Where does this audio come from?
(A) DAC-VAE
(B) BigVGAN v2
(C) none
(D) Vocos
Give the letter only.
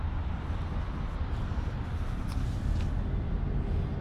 C